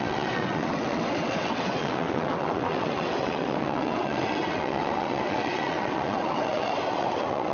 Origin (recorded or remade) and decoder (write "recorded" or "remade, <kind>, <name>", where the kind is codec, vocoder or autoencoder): remade, vocoder, WaveNeXt